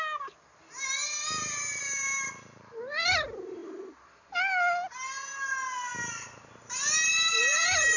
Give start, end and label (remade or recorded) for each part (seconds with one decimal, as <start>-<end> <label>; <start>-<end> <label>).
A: 0.0-8.0 recorded

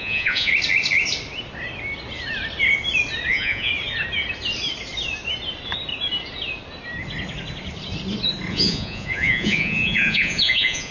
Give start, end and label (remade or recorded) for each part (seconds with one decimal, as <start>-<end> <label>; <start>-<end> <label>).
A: 0.0-0.5 remade; 0.5-3.3 recorded; 3.3-3.7 remade; 3.7-8.5 recorded; 8.5-10.9 remade

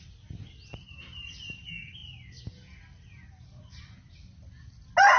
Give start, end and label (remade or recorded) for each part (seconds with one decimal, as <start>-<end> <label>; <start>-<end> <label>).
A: 0.0-5.2 recorded

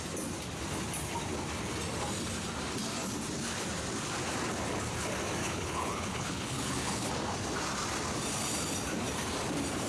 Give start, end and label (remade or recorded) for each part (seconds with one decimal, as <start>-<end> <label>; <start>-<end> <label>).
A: 0.0-5.4 recorded; 5.4-7.1 remade; 7.1-9.9 recorded